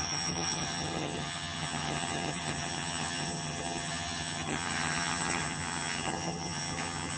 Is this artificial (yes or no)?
yes